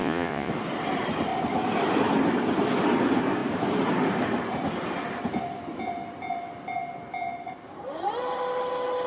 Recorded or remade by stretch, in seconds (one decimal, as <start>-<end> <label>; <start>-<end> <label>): 0.0-0.5 remade; 0.5-9.1 recorded